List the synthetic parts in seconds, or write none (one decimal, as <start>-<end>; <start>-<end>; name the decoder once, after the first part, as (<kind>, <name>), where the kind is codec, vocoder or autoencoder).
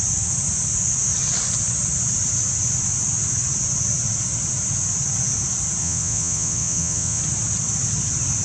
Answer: 5.8-7.2 (vocoder, WaveNeXt)